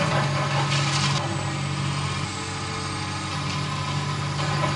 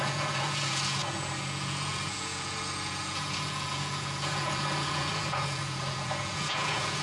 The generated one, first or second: second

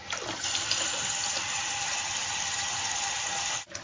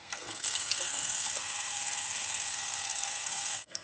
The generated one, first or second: second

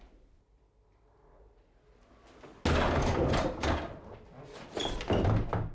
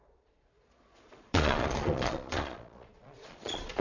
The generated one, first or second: second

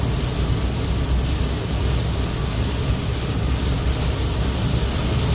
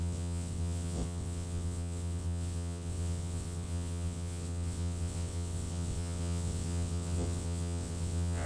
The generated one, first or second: second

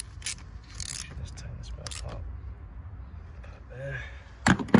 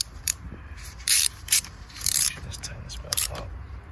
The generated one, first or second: second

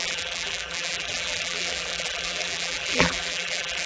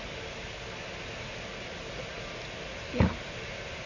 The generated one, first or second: first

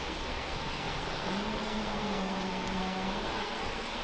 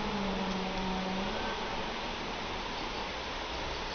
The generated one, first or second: first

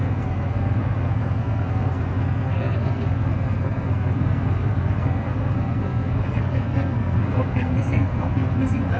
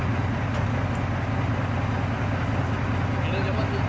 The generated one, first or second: first